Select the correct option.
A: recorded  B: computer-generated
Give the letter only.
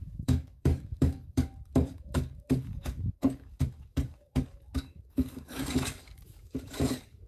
B